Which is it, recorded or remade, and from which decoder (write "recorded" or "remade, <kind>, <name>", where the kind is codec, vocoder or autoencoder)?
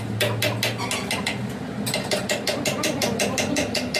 recorded